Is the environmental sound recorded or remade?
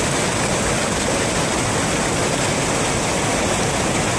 recorded